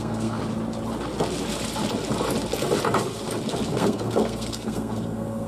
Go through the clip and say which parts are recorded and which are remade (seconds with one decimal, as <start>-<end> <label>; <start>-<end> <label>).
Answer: 0.0-0.4 remade; 0.4-3.7 recorded; 3.7-5.5 remade